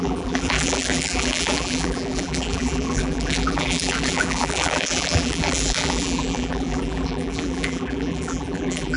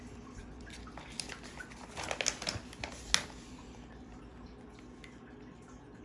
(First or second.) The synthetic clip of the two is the first